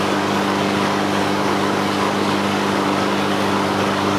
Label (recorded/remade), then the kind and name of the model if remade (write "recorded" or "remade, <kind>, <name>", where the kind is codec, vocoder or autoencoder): remade, codec, DAC